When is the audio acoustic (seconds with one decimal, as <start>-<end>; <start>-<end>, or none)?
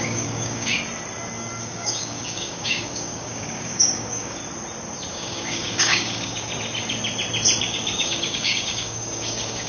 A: 0.7-1.6; 4.4-5.1; 6.5-7.6